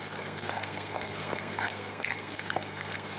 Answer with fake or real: fake